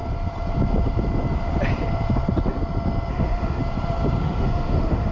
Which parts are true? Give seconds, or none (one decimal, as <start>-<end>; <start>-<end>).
0.0-3.1; 3.6-4.2